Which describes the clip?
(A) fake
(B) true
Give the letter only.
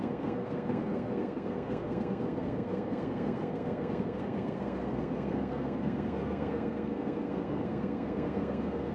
A